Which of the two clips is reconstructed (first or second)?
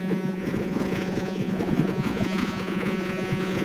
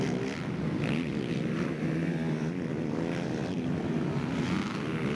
first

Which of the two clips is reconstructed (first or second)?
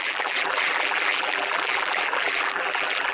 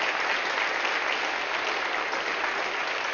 first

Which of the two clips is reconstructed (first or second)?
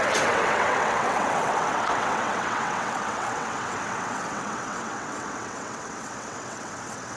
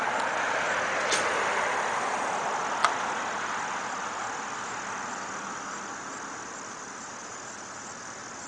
first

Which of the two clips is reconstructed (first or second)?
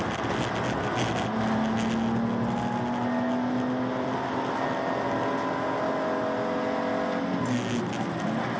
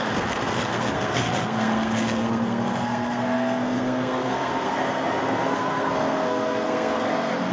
second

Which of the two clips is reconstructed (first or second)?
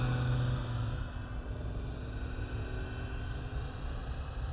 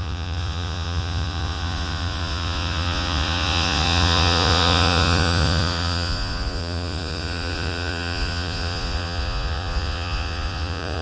second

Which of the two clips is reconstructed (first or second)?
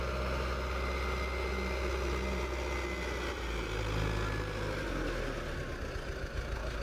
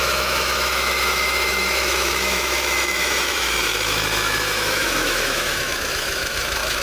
second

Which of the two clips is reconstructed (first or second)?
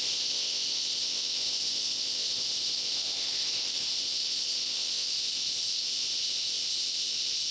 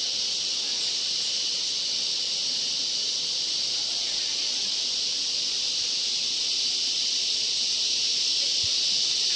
first